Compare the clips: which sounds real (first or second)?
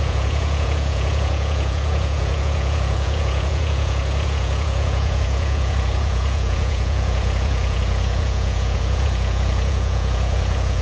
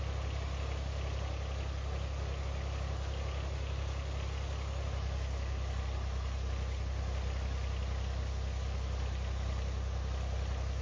second